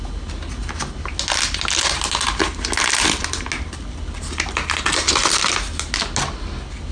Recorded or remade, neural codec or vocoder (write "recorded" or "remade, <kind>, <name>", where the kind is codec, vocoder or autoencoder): recorded